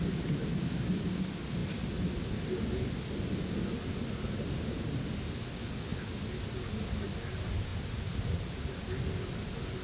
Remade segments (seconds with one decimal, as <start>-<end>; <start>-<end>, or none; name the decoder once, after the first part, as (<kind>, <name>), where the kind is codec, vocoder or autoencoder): none